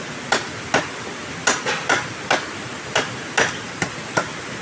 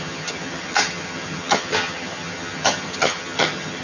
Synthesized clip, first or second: second